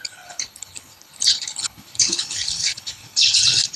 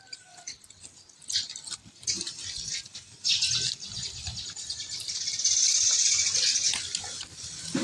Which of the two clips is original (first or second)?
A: second